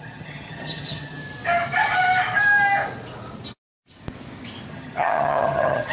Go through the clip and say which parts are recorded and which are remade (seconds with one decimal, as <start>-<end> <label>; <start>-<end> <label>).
0.0-1.2 remade; 1.2-4.7 recorded; 4.7-5.9 remade